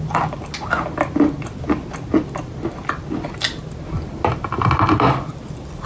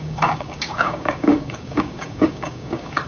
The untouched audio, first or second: first